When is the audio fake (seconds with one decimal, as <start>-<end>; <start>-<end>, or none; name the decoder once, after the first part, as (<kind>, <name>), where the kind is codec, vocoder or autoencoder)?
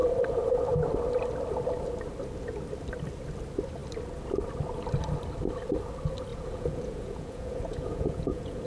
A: 6.3-8.7 (vocoder, Vocos)